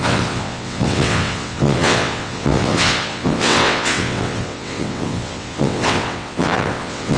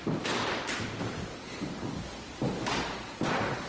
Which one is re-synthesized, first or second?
first